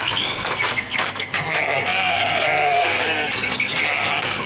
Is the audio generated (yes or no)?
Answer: yes